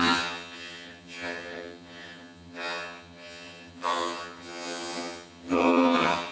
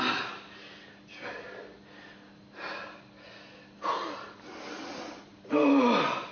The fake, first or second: first